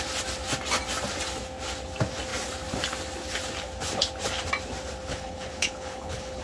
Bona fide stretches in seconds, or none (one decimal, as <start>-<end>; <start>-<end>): 0.0-5.1